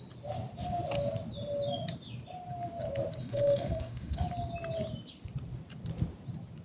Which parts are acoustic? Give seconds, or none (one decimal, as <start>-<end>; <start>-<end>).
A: 0.0-3.2; 4.3-6.6